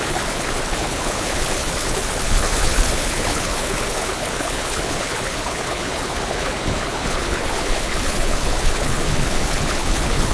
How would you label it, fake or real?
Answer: fake